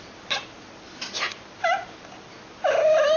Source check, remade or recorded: recorded